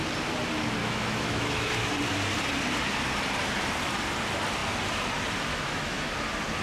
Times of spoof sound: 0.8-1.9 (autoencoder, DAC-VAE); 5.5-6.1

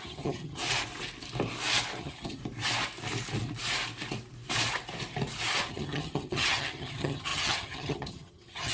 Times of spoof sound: 0.0-0.6 (vocoder, HiFi-GAN); 2.0-2.4; 5.7-8.7

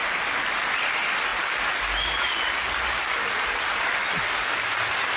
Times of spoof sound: none